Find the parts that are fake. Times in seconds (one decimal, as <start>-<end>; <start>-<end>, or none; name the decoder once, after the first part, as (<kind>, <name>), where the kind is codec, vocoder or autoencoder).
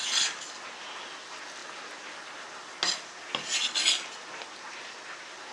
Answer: none